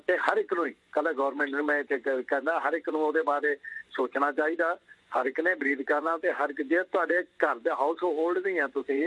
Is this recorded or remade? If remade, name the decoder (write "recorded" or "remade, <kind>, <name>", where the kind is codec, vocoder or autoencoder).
remade, vocoder, Vocos